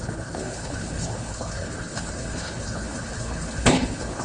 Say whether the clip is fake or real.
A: fake